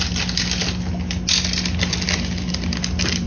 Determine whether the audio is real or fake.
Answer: real